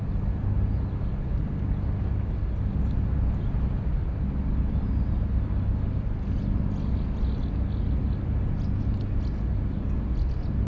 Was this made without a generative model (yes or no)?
yes